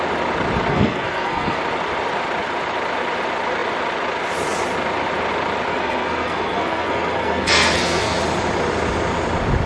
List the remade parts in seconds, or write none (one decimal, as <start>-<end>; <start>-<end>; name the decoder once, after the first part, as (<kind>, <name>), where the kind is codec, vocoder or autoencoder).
0.7-1.6 (codec, SNAC); 5.7-8.2